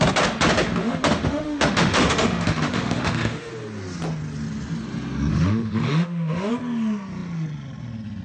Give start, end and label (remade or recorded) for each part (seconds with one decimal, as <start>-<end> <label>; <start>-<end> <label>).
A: 0.0-0.8 recorded; 0.8-3.5 remade; 3.5-5.3 recorded; 5.3-6.5 remade; 6.5-8.2 recorded